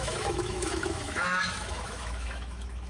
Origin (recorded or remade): remade